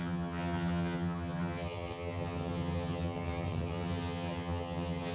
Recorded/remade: remade